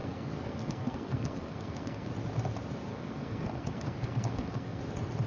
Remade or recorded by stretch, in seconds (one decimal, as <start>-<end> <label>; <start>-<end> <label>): 0.0-2.1 remade; 2.1-2.9 recorded; 2.9-4.8 remade; 4.8-5.3 recorded